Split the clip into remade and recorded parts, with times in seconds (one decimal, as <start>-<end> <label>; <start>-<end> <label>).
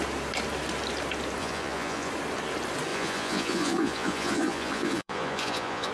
0.0-1.4 recorded; 1.4-2.1 remade; 2.1-2.9 recorded; 2.9-5.9 remade